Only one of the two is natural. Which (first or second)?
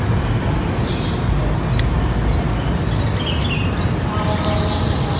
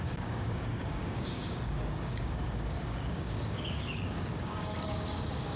first